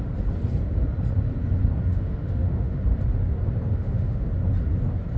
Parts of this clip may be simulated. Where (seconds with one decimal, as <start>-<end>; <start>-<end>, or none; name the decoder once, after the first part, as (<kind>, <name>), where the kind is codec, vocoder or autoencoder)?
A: 1.9-2.8 (autoencoder, DAC-VAE); 3.7-4.3